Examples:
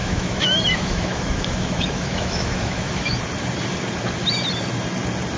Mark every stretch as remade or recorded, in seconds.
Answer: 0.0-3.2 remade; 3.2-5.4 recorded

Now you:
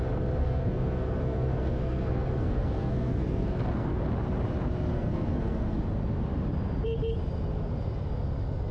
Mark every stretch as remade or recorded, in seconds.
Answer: 0.0-0.4 recorded; 0.4-4.0 remade; 4.0-4.9 recorded; 4.9-5.8 remade; 5.8-8.7 recorded

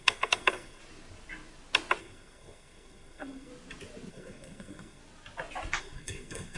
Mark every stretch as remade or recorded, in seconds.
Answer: 0.0-0.8 remade; 0.8-2.0 recorded; 2.0-3.5 remade; 3.5-4.1 recorded; 4.1-5.0 remade; 5.0-5.8 recorded; 5.8-6.6 remade